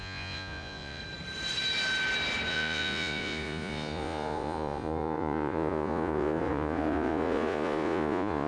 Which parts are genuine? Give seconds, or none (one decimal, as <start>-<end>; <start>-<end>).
1.0-2.5